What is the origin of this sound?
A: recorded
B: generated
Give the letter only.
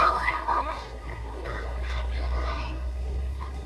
B